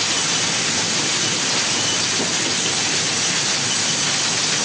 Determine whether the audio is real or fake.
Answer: real